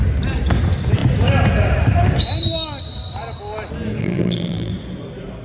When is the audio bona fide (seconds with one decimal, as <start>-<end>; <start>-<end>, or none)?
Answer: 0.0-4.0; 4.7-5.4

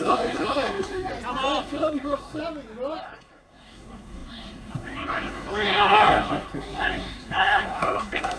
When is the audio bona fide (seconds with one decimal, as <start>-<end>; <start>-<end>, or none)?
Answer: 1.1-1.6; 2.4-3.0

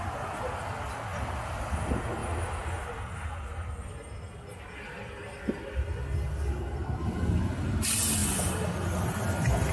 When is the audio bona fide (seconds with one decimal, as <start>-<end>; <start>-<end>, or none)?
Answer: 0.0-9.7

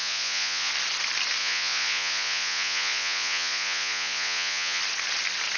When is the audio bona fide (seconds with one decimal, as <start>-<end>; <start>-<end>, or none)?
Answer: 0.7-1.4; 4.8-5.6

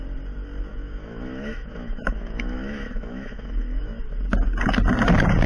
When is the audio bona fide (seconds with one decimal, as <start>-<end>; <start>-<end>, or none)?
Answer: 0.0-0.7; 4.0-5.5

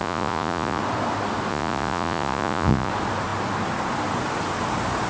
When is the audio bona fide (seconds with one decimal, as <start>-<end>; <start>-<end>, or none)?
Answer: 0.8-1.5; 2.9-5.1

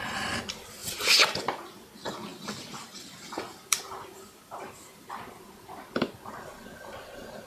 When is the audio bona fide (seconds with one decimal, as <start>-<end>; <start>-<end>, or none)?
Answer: 0.0-0.8; 1.4-2.3; 6.1-7.5